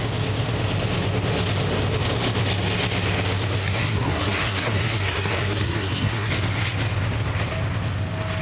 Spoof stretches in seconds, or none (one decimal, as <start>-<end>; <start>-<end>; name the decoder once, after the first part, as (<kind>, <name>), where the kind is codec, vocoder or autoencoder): 3.6-6.3 (codec, SNAC)